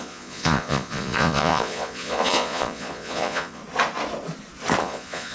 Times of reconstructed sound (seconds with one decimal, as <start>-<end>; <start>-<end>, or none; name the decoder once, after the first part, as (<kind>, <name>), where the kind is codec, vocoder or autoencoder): 0.0-3.6 (vocoder, Vocos); 4.8-5.3